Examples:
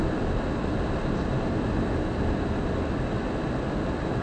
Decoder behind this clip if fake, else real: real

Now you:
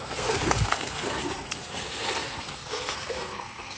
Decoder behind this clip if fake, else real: fake, codec, SNAC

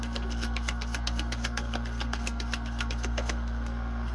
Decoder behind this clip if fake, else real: fake, codec, SNAC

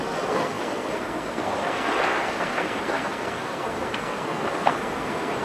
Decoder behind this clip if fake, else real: fake, codec, SNAC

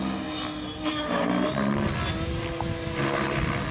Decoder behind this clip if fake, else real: real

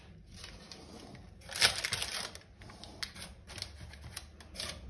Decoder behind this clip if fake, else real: real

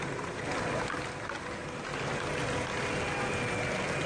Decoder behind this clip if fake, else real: real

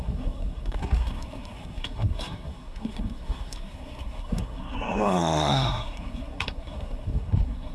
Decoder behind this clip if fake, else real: fake, codec, SNAC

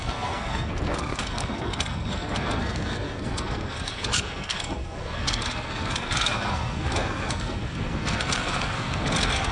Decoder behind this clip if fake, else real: fake, codec, SNAC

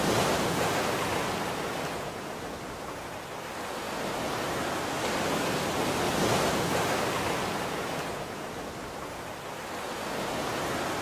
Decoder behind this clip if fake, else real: real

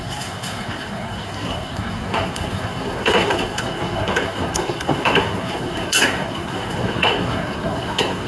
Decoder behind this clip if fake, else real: fake, codec, SNAC